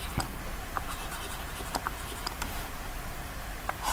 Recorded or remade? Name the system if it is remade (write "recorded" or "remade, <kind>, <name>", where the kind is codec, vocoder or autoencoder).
remade, vocoder, BigVGAN v2